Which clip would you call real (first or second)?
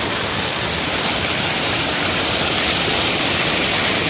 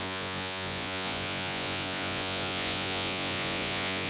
first